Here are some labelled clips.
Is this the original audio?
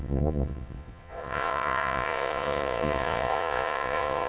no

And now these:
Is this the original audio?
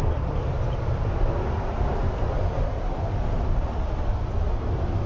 yes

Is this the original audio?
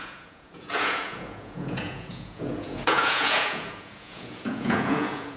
no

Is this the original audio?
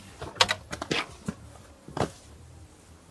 yes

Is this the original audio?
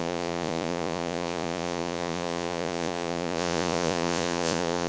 no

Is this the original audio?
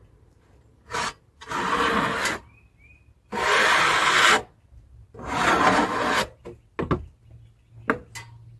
yes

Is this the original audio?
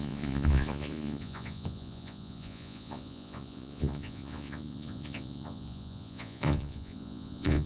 no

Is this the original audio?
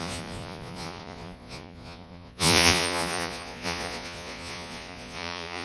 no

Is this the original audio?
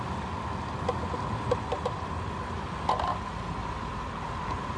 yes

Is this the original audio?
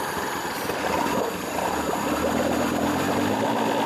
yes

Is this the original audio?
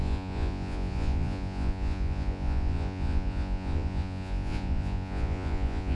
no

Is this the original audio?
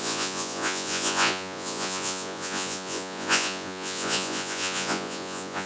no